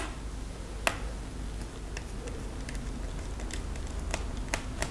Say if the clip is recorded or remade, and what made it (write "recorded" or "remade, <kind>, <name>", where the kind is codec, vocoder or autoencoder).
recorded